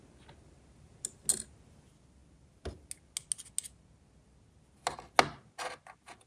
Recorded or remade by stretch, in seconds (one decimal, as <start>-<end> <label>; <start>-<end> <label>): 0.0-6.3 recorded